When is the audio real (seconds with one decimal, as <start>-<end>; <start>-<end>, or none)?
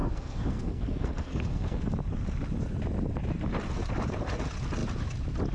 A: 1.9-5.5